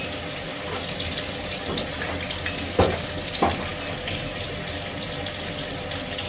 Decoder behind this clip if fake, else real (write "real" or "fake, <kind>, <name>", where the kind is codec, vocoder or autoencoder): fake, vocoder, BigVGAN v2